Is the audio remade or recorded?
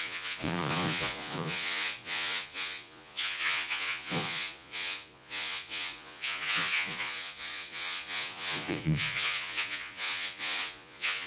remade